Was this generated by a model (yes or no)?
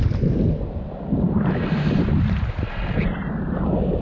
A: no